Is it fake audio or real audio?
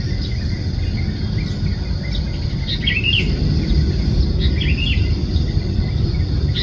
real